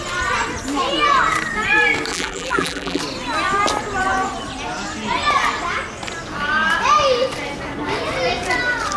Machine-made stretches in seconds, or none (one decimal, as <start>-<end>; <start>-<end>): 2.1-3.0